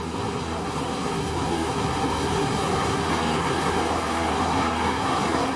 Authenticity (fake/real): fake